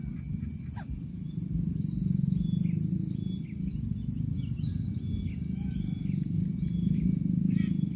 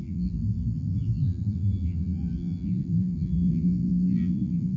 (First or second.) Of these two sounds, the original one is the first